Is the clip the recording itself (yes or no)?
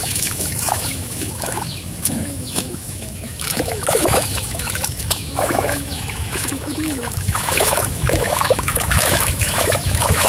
no